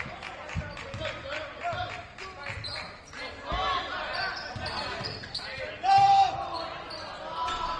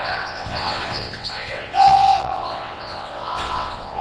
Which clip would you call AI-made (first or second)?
second